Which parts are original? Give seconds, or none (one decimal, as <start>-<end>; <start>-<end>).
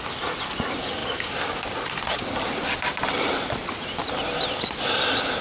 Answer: 0.0-5.4